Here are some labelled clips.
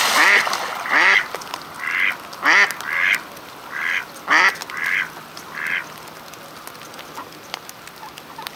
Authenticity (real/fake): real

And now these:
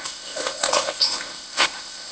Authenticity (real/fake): fake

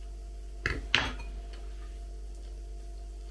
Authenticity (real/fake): real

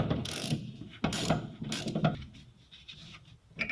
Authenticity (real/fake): fake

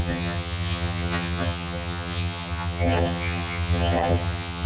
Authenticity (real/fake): fake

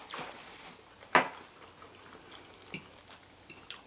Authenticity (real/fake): real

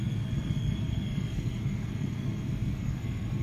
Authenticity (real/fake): fake